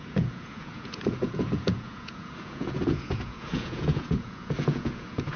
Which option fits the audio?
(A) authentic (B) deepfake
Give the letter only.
B